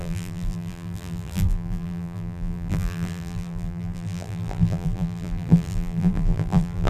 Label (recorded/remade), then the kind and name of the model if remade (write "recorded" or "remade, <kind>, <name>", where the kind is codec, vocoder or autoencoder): remade, vocoder, BigVGAN v2